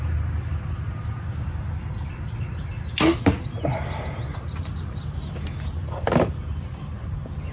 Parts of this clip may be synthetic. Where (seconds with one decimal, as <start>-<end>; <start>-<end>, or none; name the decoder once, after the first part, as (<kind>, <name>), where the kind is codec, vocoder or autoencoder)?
none